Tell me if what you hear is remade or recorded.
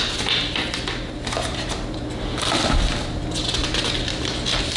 recorded